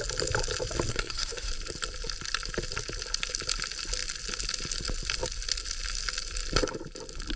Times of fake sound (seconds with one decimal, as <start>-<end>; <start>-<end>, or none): 0.9-1.5